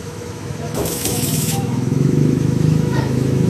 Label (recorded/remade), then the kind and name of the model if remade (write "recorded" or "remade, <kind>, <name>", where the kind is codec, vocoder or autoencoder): remade, autoencoder, DAC-VAE